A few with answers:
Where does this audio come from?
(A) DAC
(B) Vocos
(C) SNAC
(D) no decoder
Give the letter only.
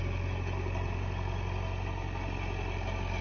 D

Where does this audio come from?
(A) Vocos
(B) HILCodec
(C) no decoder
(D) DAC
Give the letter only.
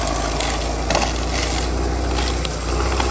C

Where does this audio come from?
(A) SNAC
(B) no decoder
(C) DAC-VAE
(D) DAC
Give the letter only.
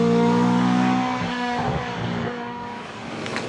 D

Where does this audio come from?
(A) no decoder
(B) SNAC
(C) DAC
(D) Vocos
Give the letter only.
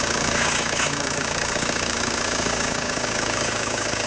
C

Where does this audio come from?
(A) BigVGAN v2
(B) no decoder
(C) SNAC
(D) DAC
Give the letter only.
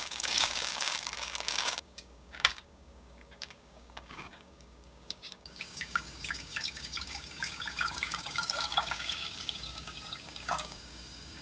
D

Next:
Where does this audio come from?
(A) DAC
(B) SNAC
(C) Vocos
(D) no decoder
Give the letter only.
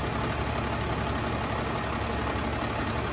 D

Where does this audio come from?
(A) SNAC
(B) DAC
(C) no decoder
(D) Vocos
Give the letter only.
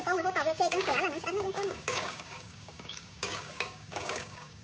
B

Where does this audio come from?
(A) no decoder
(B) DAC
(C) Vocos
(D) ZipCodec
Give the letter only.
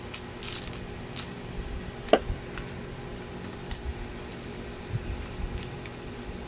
A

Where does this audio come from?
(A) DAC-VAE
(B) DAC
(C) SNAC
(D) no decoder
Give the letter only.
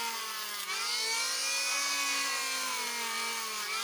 D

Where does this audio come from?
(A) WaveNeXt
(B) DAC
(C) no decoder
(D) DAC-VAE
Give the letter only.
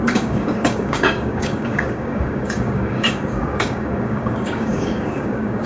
B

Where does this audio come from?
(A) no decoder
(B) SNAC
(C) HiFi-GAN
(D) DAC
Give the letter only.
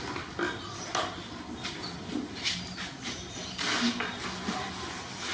A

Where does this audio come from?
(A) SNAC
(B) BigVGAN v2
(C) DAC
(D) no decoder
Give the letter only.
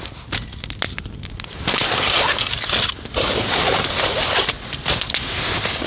D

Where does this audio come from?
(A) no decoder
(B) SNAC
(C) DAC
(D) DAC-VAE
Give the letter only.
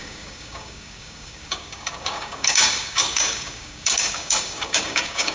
C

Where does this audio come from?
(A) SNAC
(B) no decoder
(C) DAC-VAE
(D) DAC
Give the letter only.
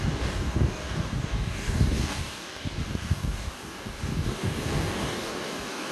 D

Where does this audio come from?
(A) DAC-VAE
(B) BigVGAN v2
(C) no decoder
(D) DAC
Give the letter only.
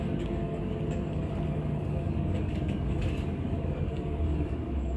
D